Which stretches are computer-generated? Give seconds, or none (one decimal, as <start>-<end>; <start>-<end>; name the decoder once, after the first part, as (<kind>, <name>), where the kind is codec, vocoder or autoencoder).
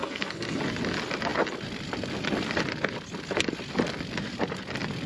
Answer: 0.0-0.6 (codec, SNAC)